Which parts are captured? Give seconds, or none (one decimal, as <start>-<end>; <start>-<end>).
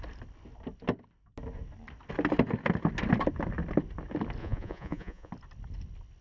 0.0-4.4; 5.3-6.2